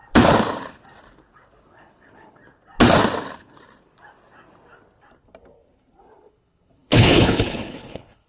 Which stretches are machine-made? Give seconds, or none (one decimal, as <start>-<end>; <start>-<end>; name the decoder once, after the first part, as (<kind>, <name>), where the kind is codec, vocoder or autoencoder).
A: 1.6-2.4 (codec, HILCodec); 6.0-8.3